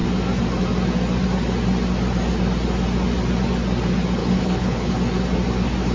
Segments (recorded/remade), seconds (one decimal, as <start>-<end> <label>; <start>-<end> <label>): 0.0-4.2 recorded; 4.2-5.0 remade; 5.0-5.9 recorded